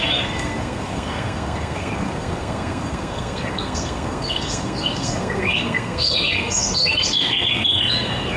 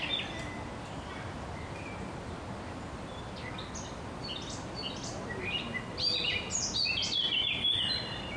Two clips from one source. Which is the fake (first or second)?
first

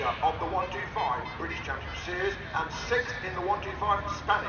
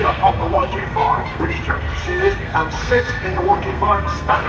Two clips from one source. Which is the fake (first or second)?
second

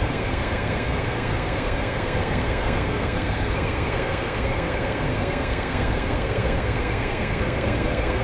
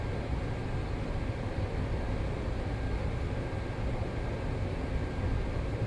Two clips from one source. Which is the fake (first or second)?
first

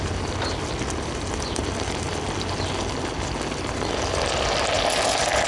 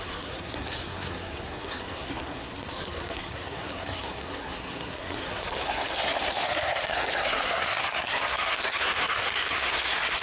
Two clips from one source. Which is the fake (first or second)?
second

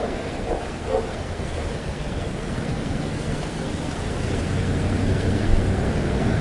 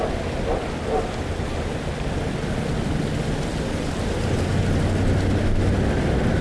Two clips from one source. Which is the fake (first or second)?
first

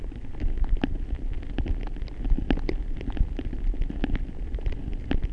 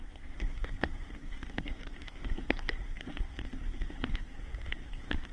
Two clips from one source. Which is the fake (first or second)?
second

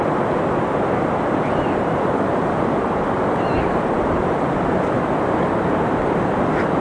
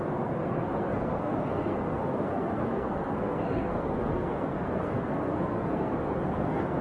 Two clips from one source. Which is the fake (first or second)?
second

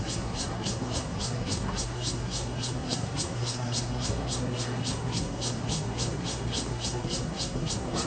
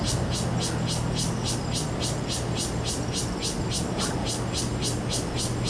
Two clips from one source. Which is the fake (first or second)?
first